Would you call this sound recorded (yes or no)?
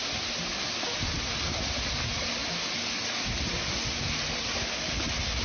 yes